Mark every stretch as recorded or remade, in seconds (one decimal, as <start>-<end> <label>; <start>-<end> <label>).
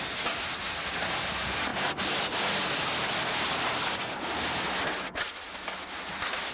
0.0-6.5 recorded